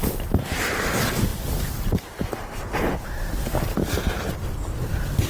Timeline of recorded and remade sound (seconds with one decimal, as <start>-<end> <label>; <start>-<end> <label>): 0.0-1.3 recorded; 1.3-4.5 remade; 4.5-5.3 recorded